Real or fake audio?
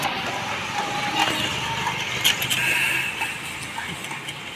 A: real